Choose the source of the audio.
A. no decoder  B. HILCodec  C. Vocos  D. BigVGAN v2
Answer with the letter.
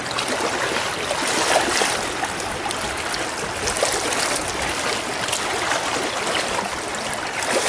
A